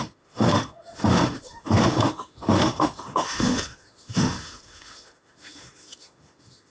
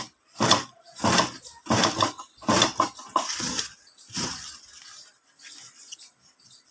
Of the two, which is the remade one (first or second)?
first